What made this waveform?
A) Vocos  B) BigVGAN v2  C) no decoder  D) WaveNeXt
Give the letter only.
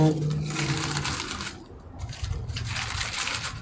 C